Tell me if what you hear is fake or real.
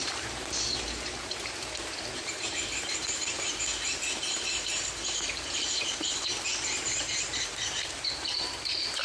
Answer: fake